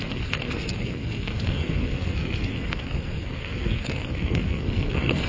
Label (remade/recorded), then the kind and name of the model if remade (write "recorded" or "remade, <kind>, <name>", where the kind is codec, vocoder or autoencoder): remade, codec, SNAC